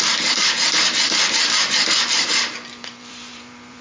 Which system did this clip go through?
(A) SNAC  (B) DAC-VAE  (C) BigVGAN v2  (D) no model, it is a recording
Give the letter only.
C